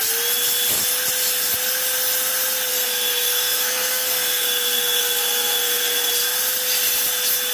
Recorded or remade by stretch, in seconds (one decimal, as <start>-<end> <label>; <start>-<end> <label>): 0.0-2.7 recorded; 2.7-6.1 remade; 6.1-7.5 recorded